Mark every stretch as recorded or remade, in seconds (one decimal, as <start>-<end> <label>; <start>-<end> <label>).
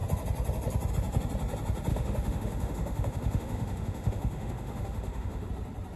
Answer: 0.0-1.9 recorded; 1.9-5.5 remade; 5.5-6.0 recorded